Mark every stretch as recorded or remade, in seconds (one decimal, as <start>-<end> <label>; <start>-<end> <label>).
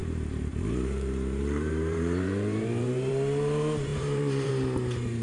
0.0-3.1 remade; 3.1-3.9 recorded; 3.9-4.5 remade; 4.5-5.2 recorded